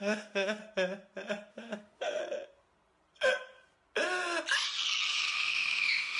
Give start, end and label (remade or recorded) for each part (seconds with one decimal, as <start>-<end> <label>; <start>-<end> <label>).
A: 0.0-0.6 remade; 0.6-1.5 recorded; 1.5-2.2 remade; 2.2-5.3 recorded; 5.3-6.2 remade